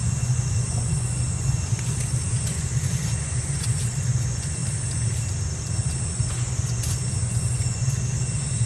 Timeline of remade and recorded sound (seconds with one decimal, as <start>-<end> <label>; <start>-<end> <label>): 0.0-4.6 remade; 4.6-5.7 recorded; 5.7-8.7 remade